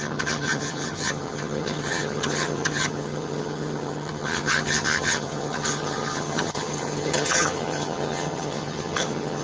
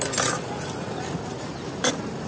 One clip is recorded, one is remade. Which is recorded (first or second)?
second